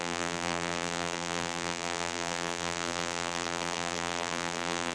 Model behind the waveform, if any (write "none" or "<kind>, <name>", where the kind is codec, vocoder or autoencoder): vocoder, BigVGAN v2